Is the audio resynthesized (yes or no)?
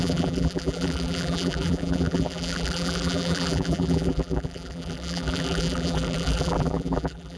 yes